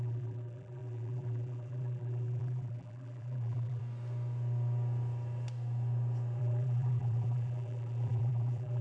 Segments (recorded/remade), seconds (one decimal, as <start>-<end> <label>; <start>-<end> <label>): 0.0-3.8 remade; 3.8-6.4 recorded; 6.4-8.8 remade